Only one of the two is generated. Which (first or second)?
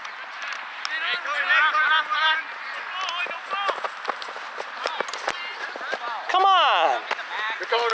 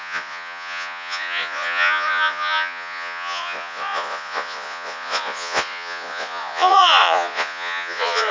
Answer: second